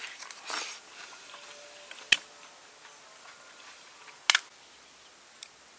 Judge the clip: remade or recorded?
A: recorded